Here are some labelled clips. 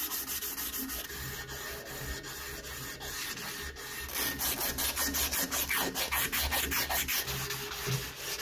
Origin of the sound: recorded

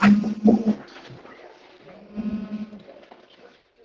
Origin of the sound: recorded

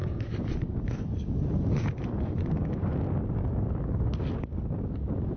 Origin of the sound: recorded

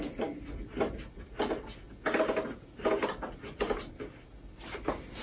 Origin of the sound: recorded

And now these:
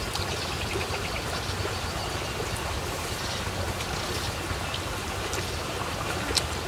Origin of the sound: recorded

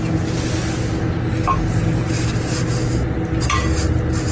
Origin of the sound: recorded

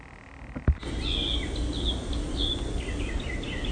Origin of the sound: recorded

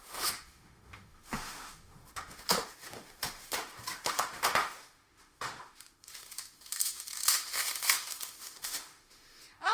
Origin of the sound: remade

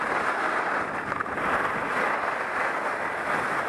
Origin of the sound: recorded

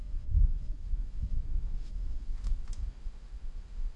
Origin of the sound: remade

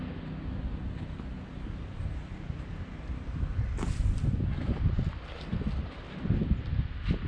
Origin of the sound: recorded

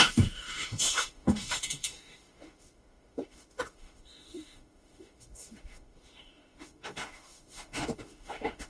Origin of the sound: remade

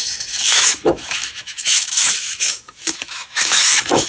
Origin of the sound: remade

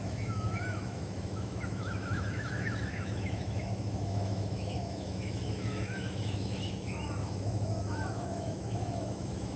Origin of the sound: remade